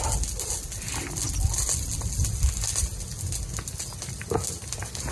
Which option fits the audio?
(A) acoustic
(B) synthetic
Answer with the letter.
A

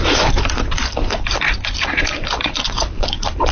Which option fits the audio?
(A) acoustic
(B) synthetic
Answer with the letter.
A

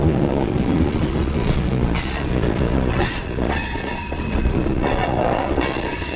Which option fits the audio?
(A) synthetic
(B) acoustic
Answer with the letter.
A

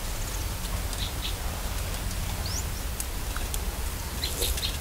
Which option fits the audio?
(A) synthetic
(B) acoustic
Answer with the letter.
B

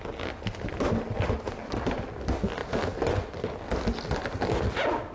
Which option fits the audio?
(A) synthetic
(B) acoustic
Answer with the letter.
B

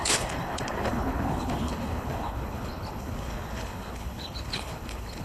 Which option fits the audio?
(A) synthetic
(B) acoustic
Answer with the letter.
A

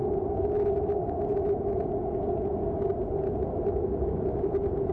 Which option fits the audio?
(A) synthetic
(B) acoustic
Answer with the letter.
B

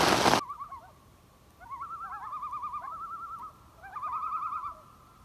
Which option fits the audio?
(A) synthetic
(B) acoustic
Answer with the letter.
B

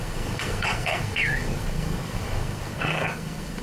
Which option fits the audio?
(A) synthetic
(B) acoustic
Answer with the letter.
A